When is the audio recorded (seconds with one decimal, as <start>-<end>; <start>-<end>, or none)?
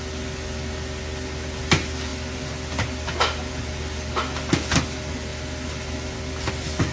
0.0-6.9